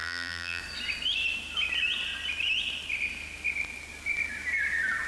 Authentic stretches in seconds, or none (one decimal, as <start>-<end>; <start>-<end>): 0.6-5.1